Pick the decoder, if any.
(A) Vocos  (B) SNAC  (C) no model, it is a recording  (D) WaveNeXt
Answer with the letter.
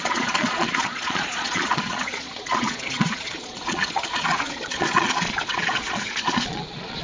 A